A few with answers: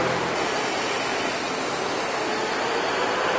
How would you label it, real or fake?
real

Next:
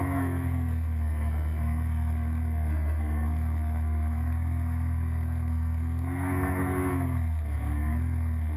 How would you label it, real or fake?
fake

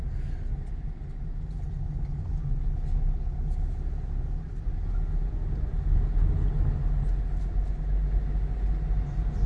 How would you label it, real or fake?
real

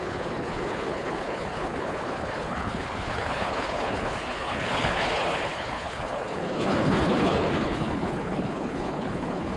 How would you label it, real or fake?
fake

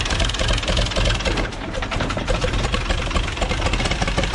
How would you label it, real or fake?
fake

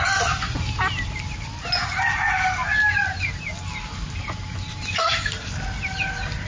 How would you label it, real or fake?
real